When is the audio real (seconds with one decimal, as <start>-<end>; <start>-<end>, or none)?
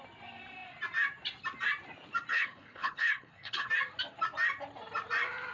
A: 0.0-2.3; 3.7-5.5